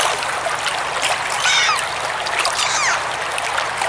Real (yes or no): yes